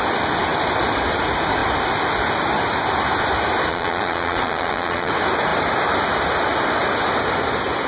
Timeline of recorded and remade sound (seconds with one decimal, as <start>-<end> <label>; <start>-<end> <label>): 0.0-3.7 recorded; 3.7-5.1 remade; 5.1-7.9 recorded